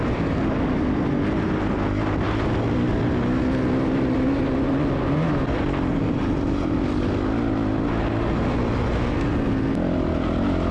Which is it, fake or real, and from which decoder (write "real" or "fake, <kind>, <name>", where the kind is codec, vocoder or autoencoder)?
real